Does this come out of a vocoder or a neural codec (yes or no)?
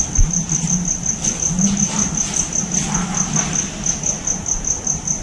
no